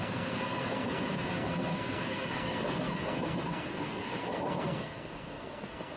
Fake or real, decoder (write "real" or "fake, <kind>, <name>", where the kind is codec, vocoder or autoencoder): fake, codec, SNAC